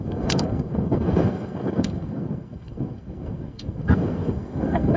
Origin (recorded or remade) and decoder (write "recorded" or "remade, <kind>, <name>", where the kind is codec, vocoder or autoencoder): remade, codec, SNAC